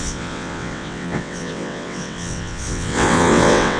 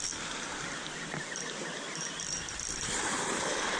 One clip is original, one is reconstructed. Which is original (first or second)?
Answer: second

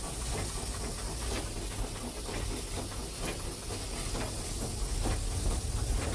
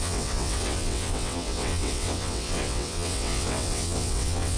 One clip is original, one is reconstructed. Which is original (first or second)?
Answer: first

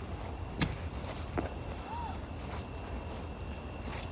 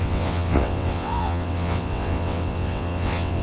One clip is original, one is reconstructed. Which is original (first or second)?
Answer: first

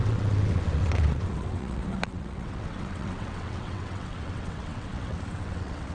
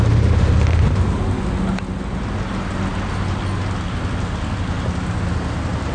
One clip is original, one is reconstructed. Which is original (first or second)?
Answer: second